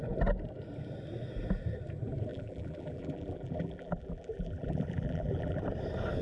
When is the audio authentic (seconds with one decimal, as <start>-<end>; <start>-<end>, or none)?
0.0-2.3; 5.6-6.2